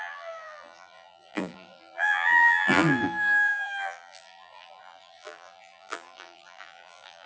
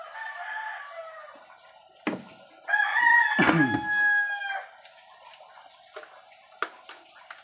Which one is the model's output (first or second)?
first